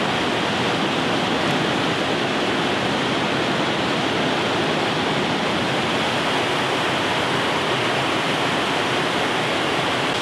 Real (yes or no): yes